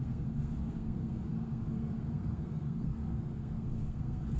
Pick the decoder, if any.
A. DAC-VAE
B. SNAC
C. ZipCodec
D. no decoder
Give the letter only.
B